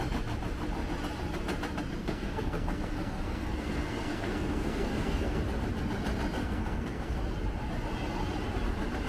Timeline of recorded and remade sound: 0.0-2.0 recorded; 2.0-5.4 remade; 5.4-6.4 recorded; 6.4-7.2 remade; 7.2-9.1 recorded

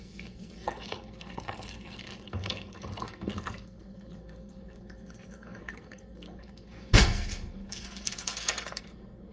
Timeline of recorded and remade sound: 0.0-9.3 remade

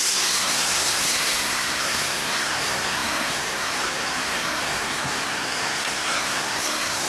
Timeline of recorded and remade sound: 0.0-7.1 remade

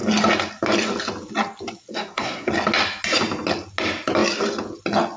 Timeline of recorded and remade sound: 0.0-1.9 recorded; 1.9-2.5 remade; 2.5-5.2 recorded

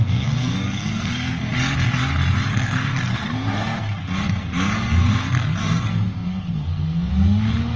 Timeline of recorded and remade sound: 0.0-1.5 remade; 1.5-2.5 recorded; 2.5-7.1 remade; 7.1-7.8 recorded

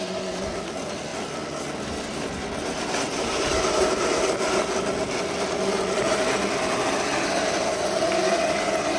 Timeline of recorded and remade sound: 0.0-9.0 recorded

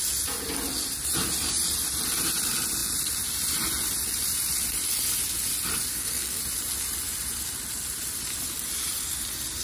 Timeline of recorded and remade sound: 0.0-5.9 recorded; 5.9-6.4 remade; 6.4-9.6 recorded